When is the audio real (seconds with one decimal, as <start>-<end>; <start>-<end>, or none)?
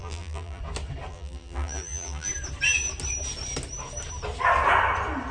0.6-1.1; 2.3-5.3